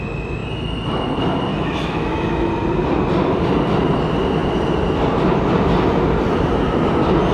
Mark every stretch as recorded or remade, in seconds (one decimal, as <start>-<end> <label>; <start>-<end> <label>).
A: 0.0-1.5 recorded; 1.5-2.5 remade; 2.5-7.3 recorded